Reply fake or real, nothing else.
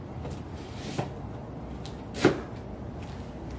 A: real